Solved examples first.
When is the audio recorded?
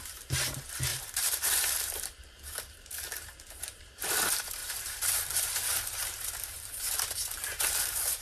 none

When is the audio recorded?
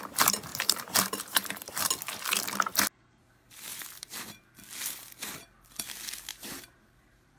0.0-0.5; 1.9-6.3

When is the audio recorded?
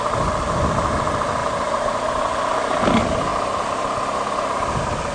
0.0-1.4; 2.2-5.1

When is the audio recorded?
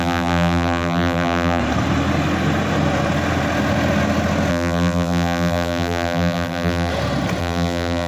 1.6-4.5; 6.9-7.4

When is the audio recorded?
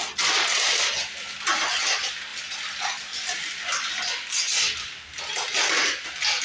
0.0-6.4